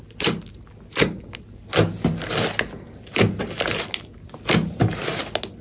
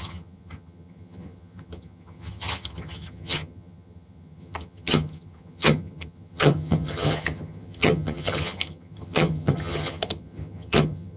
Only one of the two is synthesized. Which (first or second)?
second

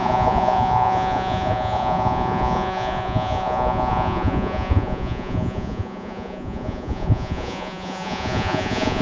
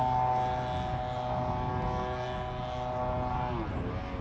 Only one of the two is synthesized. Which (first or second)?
first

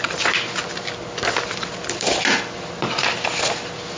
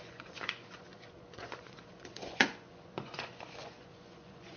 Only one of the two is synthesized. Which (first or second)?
second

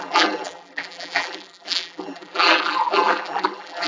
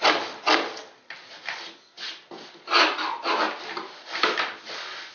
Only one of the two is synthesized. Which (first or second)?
first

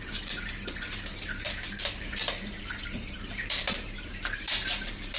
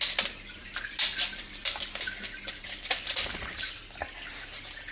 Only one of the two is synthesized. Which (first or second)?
first